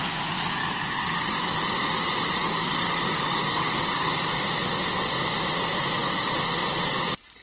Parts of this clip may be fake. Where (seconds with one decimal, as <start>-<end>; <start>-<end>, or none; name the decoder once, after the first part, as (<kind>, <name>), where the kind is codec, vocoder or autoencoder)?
0.6-1.7 (codec, DAC); 2.4-4.3